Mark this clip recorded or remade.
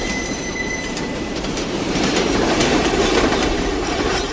remade